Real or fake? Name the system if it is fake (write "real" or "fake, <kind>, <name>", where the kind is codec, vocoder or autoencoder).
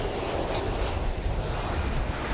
real